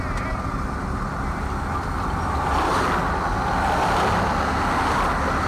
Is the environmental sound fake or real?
real